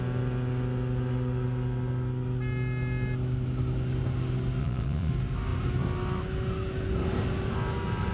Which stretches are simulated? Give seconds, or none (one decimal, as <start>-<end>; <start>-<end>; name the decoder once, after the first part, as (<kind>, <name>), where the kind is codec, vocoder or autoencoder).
4.6-5.1 (vocoder, Vocos)